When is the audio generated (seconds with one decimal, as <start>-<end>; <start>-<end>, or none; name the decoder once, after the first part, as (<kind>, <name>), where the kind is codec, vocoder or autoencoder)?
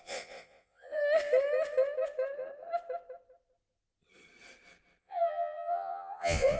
0.0-1.0 (vocoder, Vocos); 5.0-6.6